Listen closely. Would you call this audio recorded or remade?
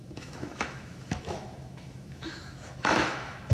remade